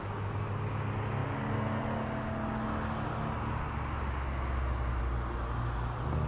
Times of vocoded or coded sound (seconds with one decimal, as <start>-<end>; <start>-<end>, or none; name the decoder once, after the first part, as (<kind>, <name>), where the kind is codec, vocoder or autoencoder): none